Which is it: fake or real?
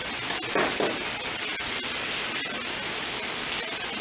real